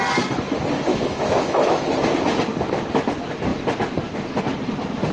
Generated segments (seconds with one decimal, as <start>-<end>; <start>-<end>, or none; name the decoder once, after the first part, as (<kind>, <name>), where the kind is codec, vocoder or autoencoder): 0.9-1.9 (autoencoder, DAC-VAE)